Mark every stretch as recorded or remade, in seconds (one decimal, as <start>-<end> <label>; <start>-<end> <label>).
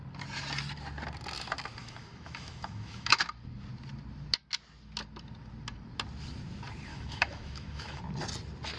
0.0-1.8 recorded; 1.8-3.2 remade; 3.2-6.9 recorded; 6.9-8.0 remade; 8.0-8.8 recorded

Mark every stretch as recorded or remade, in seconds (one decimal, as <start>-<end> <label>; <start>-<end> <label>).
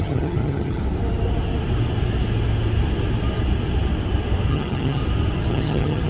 0.0-0.8 remade; 0.8-4.5 recorded; 4.5-5.0 remade; 5.0-5.5 recorded; 5.5-6.1 remade